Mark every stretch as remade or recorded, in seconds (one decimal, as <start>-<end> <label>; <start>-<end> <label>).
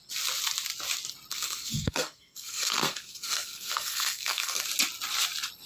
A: 0.0-1.3 recorded; 1.3-4.6 remade; 4.6-5.7 recorded